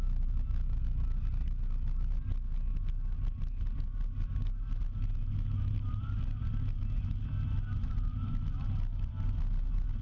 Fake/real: real